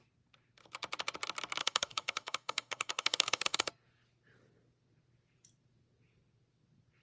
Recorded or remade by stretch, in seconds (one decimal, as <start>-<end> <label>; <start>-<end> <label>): 0.0-1.6 recorded; 1.6-3.7 remade; 3.7-7.0 recorded